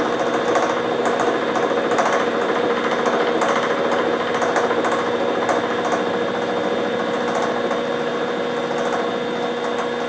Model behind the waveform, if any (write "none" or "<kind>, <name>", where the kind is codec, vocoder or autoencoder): none